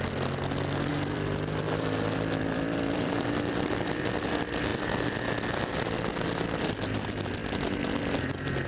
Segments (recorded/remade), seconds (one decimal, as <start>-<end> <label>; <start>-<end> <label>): 0.0-0.9 recorded; 0.9-4.1 remade; 4.1-8.7 recorded